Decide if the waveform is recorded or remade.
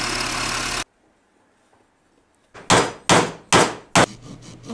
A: recorded